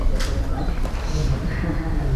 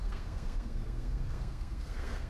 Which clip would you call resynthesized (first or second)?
second